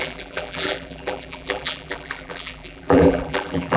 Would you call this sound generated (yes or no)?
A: yes